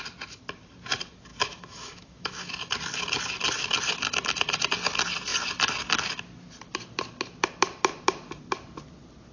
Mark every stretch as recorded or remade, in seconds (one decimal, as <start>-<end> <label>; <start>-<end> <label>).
0.0-1.3 recorded; 1.3-2.5 remade; 2.5-9.3 recorded

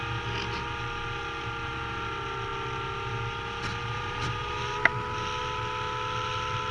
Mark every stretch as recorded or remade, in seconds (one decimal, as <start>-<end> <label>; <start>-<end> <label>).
0.0-3.8 recorded; 3.8-4.8 remade; 4.8-6.7 recorded

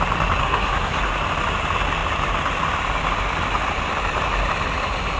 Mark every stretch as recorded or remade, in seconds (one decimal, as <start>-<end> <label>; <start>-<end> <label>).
0.0-0.4 recorded; 0.4-1.0 remade; 1.0-5.2 recorded

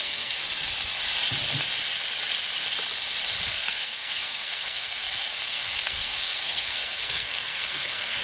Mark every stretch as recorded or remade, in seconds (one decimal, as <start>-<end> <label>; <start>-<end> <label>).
0.0-0.4 remade; 0.4-3.5 recorded; 3.5-8.2 remade

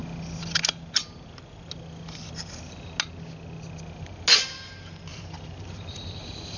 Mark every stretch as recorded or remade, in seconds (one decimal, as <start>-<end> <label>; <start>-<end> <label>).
0.0-5.1 recorded; 5.1-6.6 remade

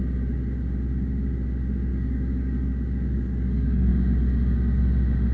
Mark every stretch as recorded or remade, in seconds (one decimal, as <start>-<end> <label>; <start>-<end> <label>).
0.0-1.9 recorded; 1.9-3.9 remade; 3.9-5.3 recorded